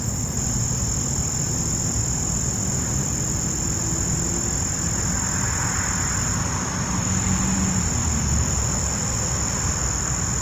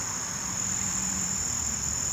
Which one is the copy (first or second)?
second